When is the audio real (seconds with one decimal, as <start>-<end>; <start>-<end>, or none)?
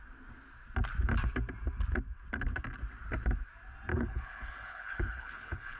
0.0-3.9